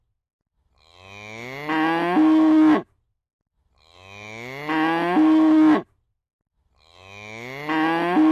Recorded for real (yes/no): yes